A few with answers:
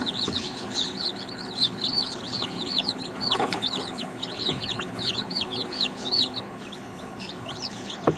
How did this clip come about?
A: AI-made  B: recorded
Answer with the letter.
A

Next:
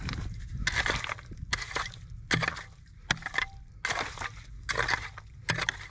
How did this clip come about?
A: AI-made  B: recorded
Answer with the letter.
B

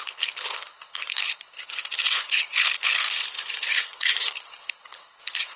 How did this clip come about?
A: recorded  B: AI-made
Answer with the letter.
B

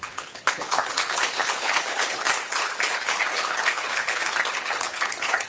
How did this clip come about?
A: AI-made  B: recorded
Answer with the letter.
A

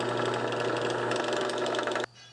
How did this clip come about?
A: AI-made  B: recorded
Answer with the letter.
B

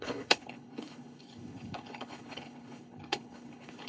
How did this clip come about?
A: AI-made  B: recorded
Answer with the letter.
A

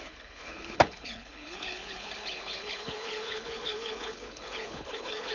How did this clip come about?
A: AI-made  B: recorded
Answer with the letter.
A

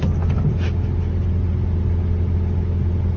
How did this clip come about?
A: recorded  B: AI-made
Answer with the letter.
A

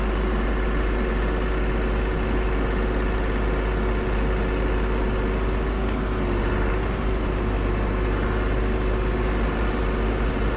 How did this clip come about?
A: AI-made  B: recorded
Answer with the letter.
B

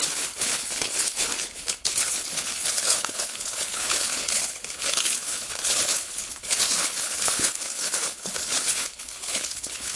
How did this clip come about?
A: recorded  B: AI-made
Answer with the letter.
B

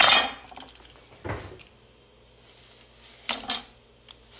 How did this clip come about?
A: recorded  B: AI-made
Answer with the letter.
A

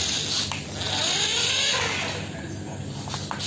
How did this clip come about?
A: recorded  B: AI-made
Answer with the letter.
A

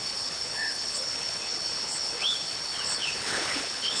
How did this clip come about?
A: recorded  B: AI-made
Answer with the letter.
B